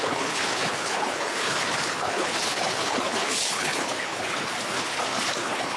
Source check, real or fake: fake